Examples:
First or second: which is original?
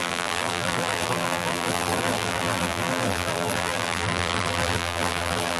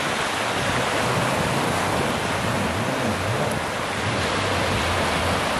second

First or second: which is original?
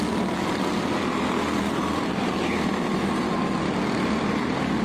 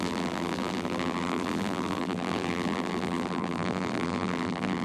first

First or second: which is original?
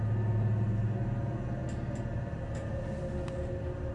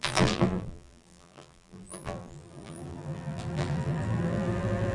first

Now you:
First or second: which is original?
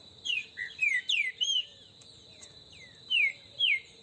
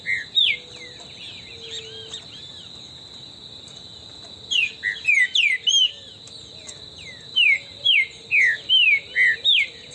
second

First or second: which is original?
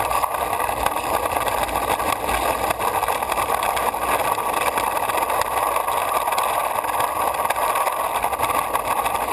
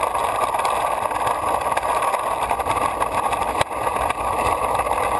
first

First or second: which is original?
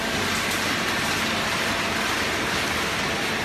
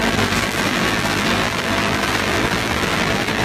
first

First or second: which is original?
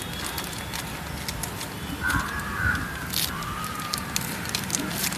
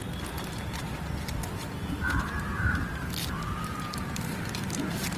first